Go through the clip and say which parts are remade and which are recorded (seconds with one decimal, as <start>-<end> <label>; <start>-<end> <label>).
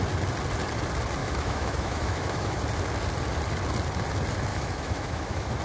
0.0-1.2 recorded; 1.2-2.6 remade; 2.6-4.5 recorded; 4.5-5.6 remade